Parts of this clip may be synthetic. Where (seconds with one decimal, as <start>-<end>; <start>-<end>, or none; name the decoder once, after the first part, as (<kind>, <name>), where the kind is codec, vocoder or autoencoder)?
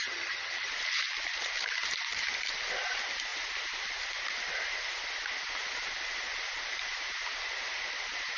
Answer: 0.0-0.7 (vocoder, HiFi-GAN)